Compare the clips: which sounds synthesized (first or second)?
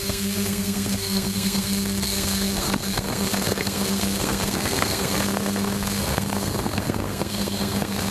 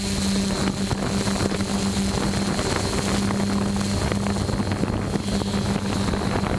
first